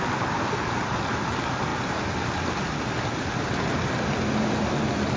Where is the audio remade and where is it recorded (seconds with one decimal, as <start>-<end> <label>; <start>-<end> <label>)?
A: 0.0-5.2 recorded